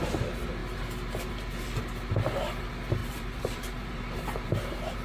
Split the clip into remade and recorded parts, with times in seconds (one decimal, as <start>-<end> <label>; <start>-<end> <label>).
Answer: 0.0-3.0 recorded; 3.0-4.6 remade; 4.6-5.0 recorded